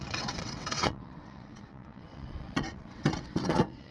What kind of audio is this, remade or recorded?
remade